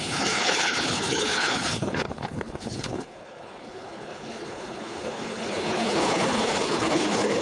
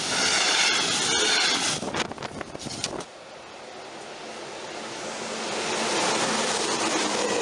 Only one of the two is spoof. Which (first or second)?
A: first